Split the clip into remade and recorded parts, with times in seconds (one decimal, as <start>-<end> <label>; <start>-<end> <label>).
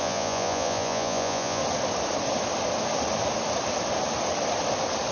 0.0-1.6 remade; 1.6-5.1 recorded